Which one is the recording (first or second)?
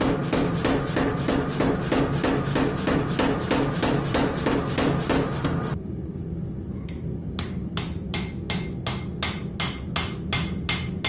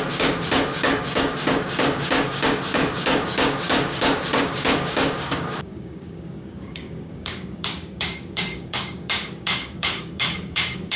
first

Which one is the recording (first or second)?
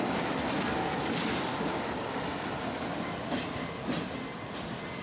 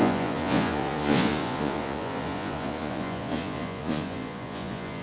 first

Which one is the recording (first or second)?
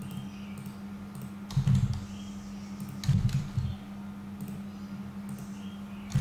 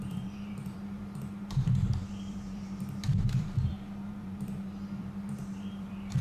first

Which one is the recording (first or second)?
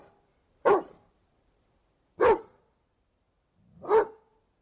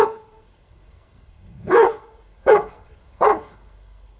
first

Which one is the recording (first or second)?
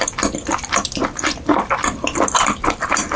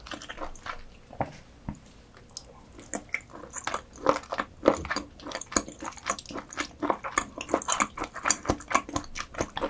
second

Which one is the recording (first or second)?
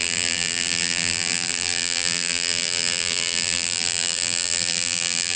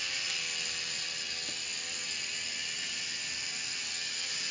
second